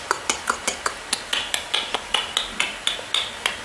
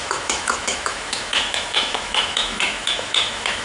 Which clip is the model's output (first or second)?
second